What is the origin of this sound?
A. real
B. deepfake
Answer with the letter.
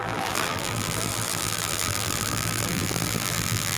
B